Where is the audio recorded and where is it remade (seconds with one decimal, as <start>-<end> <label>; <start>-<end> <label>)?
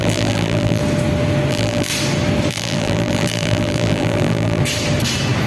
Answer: 0.0-0.8 remade; 0.8-1.5 recorded; 1.5-1.9 remade; 1.9-2.5 recorded; 2.5-4.6 remade; 4.6-5.5 recorded